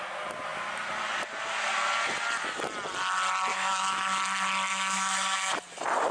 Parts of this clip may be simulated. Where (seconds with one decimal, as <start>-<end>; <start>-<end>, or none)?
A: 3.5-4.2; 4.7-5.5